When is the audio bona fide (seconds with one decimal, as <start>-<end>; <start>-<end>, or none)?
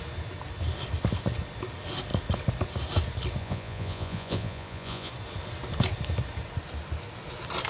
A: 0.0-3.4; 5.1-7.7